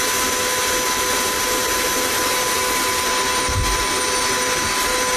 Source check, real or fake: real